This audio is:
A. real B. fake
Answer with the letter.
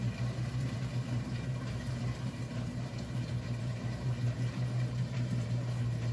B